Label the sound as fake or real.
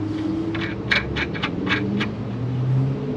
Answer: real